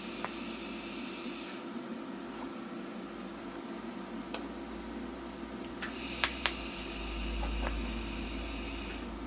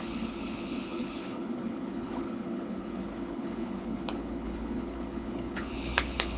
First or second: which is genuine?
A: first